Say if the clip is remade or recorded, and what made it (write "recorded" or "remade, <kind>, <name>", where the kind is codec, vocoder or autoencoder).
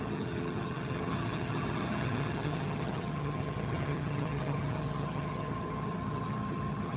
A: remade, vocoder, HiFi-GAN